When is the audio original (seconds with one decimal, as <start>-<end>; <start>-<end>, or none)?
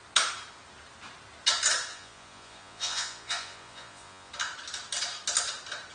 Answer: 0.0-1.9; 4.3-5.9